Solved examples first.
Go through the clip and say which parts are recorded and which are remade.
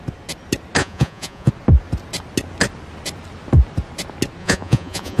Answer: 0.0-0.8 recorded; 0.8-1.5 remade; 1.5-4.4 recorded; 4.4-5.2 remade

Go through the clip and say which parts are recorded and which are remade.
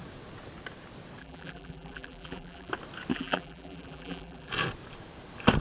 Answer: 0.0-1.2 recorded; 1.2-2.7 remade; 2.7-3.1 recorded; 3.1-4.5 remade; 4.5-5.6 recorded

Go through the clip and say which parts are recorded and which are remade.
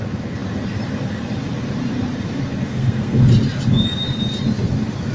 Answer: 0.0-2.7 recorded; 2.7-3.3 remade; 3.3-5.1 recorded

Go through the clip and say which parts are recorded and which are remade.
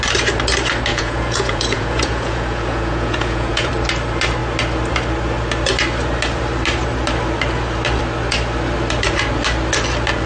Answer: 0.0-0.9 recorded; 0.9-3.7 remade; 3.7-10.3 recorded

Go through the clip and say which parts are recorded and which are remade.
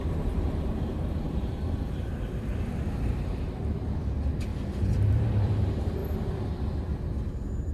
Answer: 0.0-2.5 remade; 2.5-3.1 recorded; 3.1-4.5 remade; 4.5-5.1 recorded; 5.1-6.0 remade; 6.0-7.7 recorded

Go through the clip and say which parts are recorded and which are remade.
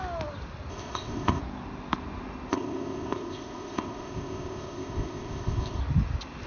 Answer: 0.0-0.7 recorded; 0.7-1.4 remade; 1.4-2.5 recorded; 2.5-5.8 remade; 5.8-6.5 recorded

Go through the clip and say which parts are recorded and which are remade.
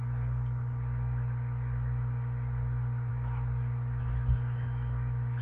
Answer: 0.0-5.4 recorded